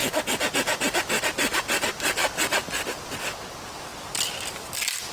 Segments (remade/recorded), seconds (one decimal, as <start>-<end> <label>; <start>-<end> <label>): 0.0-5.1 recorded

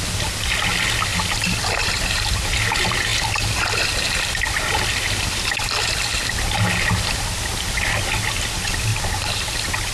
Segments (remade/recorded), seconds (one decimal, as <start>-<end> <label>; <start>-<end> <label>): 0.0-1.1 recorded; 1.1-1.8 remade; 1.8-8.9 recorded; 8.9-9.5 remade; 9.5-9.9 recorded

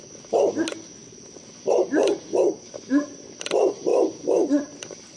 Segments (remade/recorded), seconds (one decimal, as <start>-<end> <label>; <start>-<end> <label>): 0.0-5.2 recorded

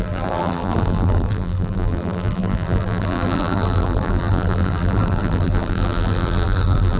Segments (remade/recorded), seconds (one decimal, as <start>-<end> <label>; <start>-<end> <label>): 0.0-7.0 remade

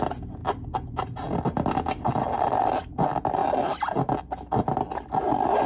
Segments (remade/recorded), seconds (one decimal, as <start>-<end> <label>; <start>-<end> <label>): 0.0-3.4 recorded; 3.4-4.2 remade; 4.2-5.7 recorded

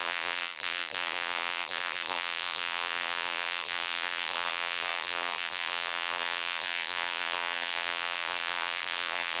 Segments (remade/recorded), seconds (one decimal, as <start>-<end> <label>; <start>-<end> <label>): 0.0-9.4 remade

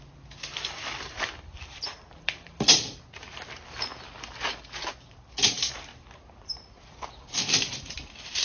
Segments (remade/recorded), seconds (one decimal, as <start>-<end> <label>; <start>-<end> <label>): 0.0-3.9 remade; 3.9-5.7 recorded; 5.7-8.4 remade

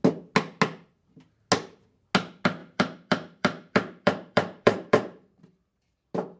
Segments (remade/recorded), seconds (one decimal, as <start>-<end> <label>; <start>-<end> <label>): 0.0-2.6 recorded; 2.6-5.4 remade; 5.4-6.4 recorded